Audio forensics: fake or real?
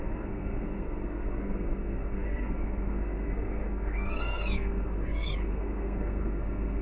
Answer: fake